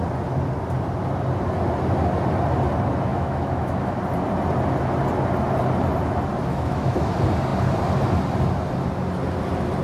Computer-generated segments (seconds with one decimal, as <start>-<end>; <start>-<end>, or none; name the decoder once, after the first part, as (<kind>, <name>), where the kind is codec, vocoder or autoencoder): 3.1-4.0 (autoencoder, DAC-VAE); 6.5-7.1